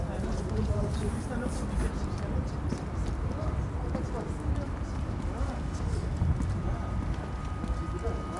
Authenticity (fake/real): real